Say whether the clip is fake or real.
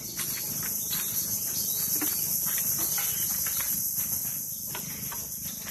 real